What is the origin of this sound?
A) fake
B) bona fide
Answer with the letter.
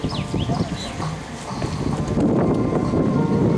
B